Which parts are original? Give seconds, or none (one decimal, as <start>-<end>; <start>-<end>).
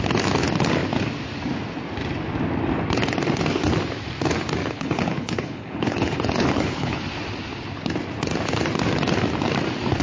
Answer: 0.0-4.6; 7.0-10.0